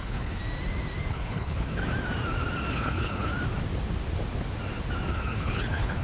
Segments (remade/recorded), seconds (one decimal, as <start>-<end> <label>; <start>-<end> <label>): 0.0-0.4 remade; 0.4-1.1 recorded; 1.1-1.8 remade; 1.8-2.7 recorded; 2.7-3.3 remade; 3.3-5.1 recorded; 5.1-6.0 remade